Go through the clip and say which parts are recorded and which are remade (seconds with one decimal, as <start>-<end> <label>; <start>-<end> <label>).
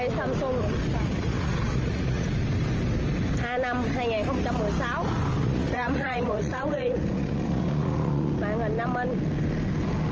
0.0-0.9 recorded; 0.9-2.3 remade; 2.3-5.4 recorded; 5.4-8.3 remade; 8.3-10.1 recorded